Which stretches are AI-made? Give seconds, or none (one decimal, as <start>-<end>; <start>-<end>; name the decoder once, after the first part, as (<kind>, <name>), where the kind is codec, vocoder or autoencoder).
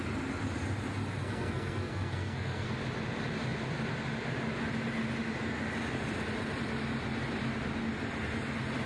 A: 1.2-2.7 (codec, SNAC)